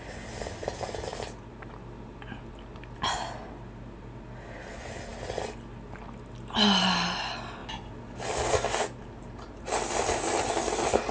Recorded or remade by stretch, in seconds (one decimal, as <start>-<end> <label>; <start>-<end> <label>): 0.0-11.1 recorded